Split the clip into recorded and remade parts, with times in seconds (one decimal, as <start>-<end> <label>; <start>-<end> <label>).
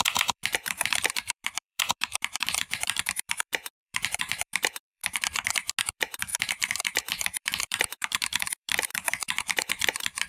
0.0-5.0 remade; 5.0-5.8 recorded; 5.8-10.3 remade